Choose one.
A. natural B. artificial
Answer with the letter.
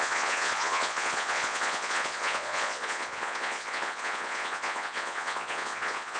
B